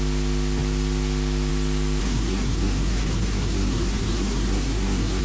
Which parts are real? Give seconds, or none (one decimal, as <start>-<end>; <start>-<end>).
0.0-2.0